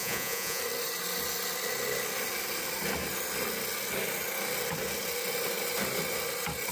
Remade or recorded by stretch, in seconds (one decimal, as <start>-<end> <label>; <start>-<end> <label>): 0.0-0.6 remade; 0.6-6.7 recorded